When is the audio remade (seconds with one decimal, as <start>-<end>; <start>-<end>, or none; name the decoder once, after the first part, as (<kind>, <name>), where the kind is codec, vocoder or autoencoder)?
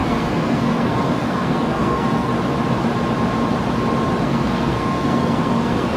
0.0-2.3 (codec, SNAC); 4.2-6.0